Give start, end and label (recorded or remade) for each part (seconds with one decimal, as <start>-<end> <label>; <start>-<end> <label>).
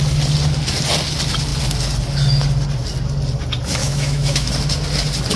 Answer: 0.0-3.8 recorded; 3.8-4.5 remade; 4.5-5.4 recorded